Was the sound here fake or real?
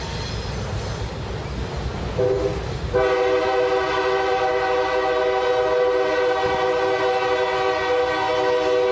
real